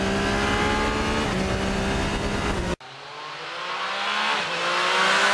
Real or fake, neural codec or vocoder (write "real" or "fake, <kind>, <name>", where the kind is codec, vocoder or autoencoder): real